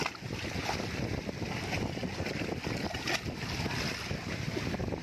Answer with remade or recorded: recorded